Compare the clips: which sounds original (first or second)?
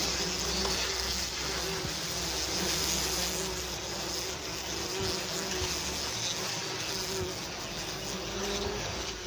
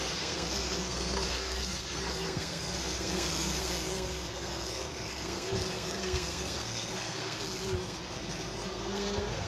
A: first